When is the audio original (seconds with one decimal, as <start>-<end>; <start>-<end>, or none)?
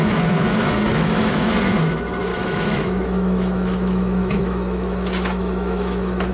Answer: 0.0-0.9; 1.5-2.3